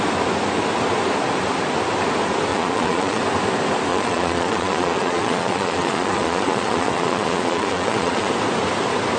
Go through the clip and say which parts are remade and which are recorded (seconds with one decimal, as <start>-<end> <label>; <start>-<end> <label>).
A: 0.0-2.5 recorded; 2.5-3.2 remade; 3.2-3.9 recorded; 3.9-8.3 remade; 8.3-9.2 recorded